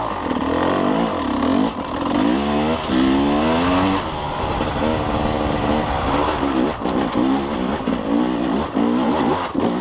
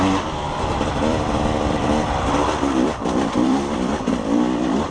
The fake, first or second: second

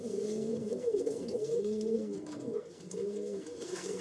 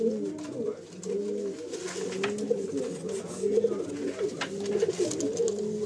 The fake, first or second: first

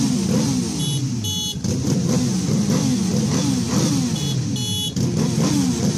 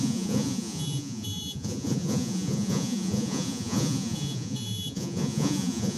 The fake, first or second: second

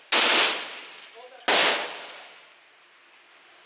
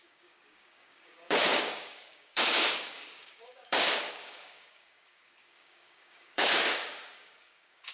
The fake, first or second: second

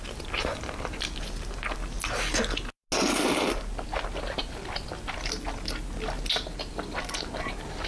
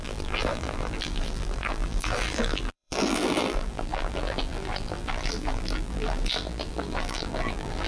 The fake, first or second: second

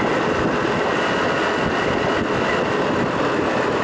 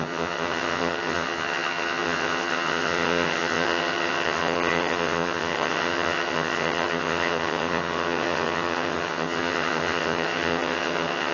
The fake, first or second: second